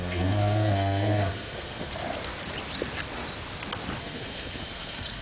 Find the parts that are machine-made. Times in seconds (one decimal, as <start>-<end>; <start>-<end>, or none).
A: 0.0-1.9; 4.0-5.2